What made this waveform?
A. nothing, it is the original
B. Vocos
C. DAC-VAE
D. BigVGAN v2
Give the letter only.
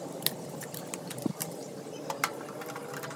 A